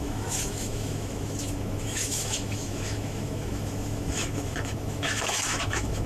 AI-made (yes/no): yes